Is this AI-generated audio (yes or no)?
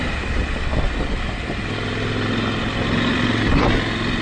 no